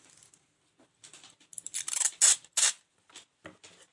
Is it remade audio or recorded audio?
recorded